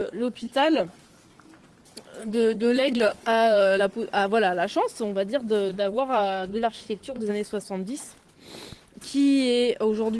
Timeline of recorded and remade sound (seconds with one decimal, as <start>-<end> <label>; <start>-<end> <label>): 0.0-0.8 remade; 0.8-2.2 recorded; 2.2-3.8 remade; 3.8-5.7 recorded; 5.7-7.3 remade; 7.3-10.2 recorded